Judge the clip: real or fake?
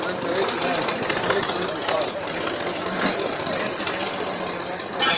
real